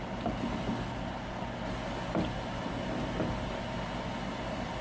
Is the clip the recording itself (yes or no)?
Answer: yes